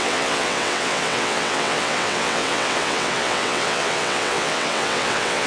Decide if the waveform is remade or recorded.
remade